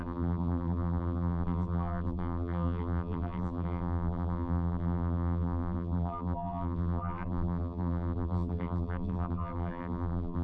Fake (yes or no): yes